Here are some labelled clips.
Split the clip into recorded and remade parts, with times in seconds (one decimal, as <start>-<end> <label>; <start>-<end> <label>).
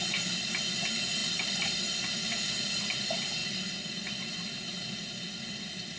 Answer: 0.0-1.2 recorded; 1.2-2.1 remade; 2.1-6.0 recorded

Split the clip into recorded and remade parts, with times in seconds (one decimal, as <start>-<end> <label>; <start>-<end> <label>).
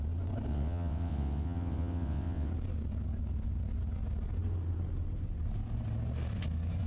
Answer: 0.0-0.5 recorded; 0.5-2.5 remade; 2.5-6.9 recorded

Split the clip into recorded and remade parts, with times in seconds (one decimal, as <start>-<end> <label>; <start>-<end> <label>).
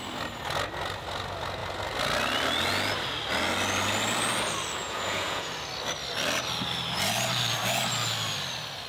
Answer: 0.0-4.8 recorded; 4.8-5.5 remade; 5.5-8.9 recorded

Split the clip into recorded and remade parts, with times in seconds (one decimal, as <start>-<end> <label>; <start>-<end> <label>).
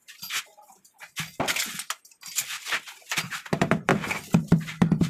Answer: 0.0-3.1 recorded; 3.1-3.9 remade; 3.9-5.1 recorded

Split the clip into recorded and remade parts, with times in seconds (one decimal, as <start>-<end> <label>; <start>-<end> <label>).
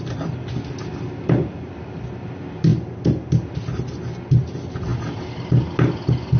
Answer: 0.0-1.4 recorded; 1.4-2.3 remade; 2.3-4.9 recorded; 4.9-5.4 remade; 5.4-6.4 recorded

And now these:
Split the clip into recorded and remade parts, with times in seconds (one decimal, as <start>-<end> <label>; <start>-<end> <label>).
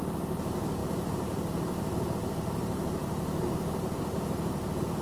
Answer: 0.0-0.8 recorded; 0.8-2.1 remade; 2.1-3.0 recorded; 3.0-4.0 remade; 4.0-5.0 recorded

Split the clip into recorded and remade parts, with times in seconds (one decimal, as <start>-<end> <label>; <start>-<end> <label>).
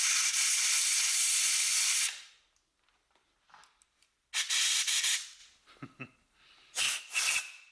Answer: 0.0-7.7 recorded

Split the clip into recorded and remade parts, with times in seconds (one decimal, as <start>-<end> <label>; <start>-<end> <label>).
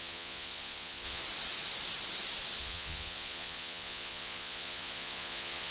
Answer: 0.0-1.2 remade; 1.2-2.6 recorded; 2.6-5.7 remade